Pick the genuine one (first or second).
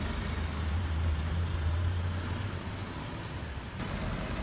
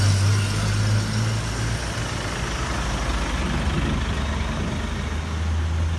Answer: second